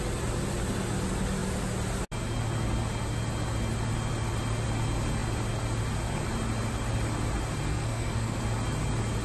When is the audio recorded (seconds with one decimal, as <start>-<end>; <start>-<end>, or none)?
0.0-7.7; 8.4-9.2